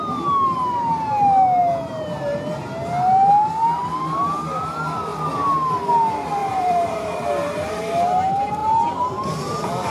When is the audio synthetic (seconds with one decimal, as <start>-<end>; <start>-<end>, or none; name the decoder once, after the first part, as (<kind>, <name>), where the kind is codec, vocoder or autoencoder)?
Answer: 6.4-7.2 (vocoder, BigVGAN v2)